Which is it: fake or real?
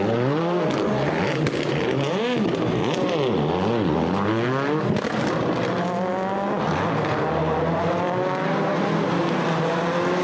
real